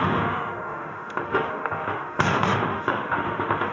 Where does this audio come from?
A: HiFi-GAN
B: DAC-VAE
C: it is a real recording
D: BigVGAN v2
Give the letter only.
B